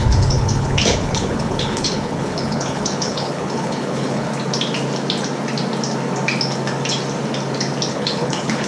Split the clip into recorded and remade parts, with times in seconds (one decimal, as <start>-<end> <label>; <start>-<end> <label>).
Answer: 0.0-4.3 remade; 4.3-7.9 recorded; 7.9-8.7 remade